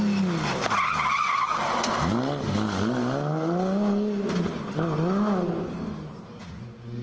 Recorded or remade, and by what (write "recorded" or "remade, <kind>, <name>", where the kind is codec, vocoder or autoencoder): recorded